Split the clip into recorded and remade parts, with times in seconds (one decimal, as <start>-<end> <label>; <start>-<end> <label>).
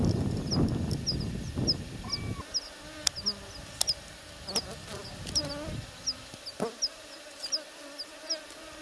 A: 0.0-8.8 recorded